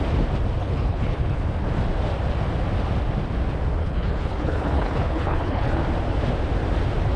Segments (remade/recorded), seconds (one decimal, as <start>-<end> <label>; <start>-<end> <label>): 0.0-0.6 recorded; 0.6-1.4 remade; 1.4-3.8 recorded; 3.8-5.8 remade; 5.8-7.2 recorded